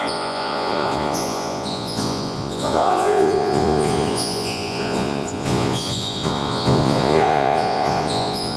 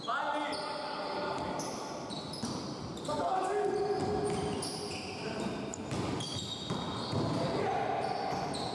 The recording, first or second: second